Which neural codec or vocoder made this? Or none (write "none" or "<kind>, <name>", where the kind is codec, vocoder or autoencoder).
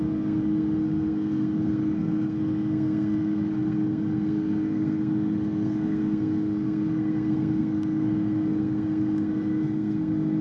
codec, SNAC